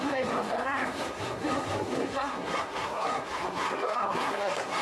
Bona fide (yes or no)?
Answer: no